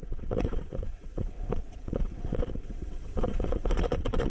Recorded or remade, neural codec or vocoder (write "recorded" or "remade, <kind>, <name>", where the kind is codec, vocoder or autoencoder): remade, vocoder, WaveNeXt